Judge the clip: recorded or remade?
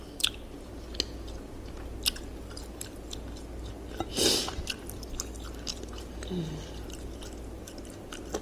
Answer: recorded